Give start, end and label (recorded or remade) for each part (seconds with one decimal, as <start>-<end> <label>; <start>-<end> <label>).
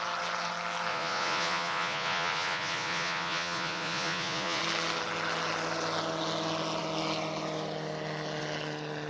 0.0-0.9 recorded; 0.9-4.6 remade; 4.6-9.1 recorded